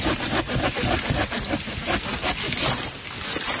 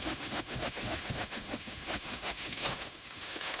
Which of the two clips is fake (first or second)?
second